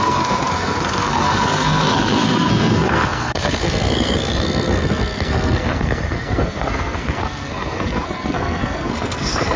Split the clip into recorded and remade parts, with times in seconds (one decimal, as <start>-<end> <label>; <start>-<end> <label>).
0.0-9.6 remade